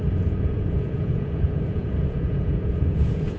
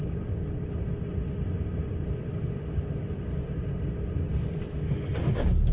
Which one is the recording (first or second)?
second